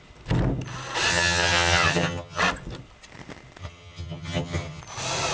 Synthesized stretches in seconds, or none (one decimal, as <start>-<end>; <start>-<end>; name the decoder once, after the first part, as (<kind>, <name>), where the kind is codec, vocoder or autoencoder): 1.1-2.4 (vocoder, HiFi-GAN); 3.6-4.8